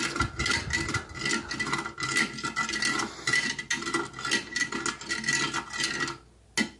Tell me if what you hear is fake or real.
real